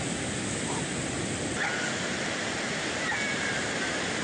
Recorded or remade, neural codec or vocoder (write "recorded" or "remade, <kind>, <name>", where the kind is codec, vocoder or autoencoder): recorded